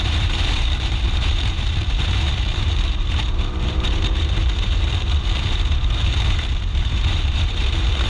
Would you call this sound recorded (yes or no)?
no